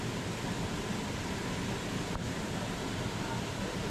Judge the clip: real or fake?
real